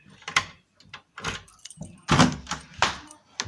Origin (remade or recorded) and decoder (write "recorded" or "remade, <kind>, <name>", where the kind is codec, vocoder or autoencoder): recorded